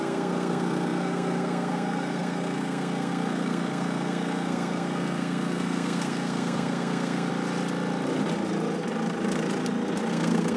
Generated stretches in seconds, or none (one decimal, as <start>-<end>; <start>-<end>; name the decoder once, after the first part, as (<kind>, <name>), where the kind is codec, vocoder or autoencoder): 0.0-7.3 (codec, SNAC); 10.1-10.6